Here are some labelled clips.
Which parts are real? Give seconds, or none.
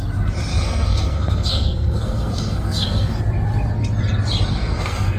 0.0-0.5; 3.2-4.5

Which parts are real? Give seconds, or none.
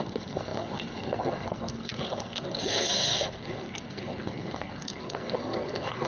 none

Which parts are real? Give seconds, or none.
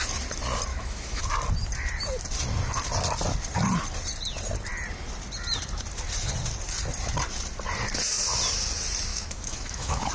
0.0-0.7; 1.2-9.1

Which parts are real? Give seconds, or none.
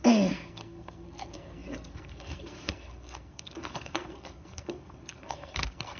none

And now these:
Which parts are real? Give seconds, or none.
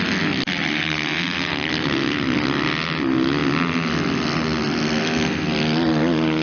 0.0-6.4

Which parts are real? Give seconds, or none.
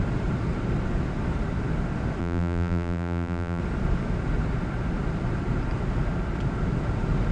0.0-2.2; 3.6-7.3